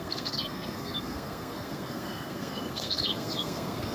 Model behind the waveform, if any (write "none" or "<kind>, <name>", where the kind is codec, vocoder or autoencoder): codec, SNAC